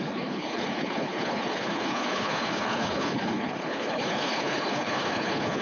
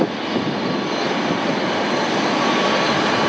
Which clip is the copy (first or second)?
first